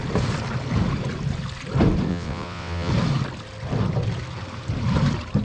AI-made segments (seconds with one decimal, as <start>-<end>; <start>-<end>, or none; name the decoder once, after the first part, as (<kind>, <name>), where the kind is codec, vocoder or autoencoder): 2.1-2.9 (vocoder, WaveNeXt)